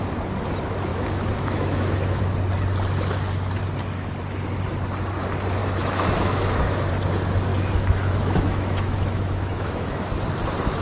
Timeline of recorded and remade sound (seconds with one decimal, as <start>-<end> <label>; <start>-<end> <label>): 0.0-0.9 recorded; 0.9-2.2 remade; 2.2-5.6 recorded; 5.6-6.9 remade; 6.9-7.5 recorded; 7.5-10.1 remade; 10.1-10.8 recorded